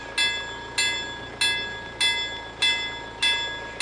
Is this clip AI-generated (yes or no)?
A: no